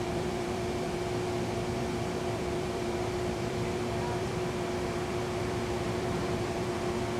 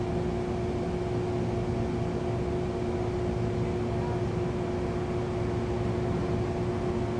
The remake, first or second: first